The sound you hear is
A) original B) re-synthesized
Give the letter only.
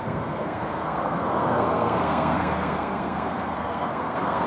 B